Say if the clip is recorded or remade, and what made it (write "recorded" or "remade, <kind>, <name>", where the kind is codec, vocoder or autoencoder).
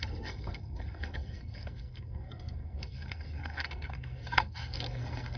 remade, codec, SNAC